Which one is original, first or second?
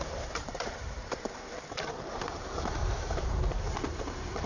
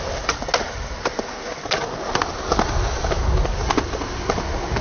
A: second